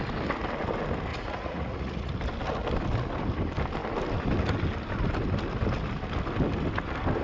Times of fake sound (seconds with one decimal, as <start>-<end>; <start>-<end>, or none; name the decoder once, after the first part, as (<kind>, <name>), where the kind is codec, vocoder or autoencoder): 1.1-2.1 (vocoder, Vocos)